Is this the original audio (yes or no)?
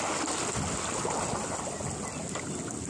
yes